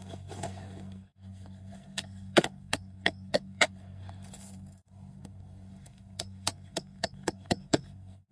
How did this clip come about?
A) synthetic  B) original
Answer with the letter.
A